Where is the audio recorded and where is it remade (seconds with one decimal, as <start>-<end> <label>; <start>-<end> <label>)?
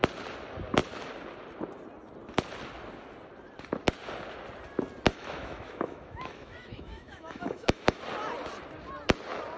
0.0-5.1 recorded; 5.1-8.0 remade; 8.0-9.6 recorded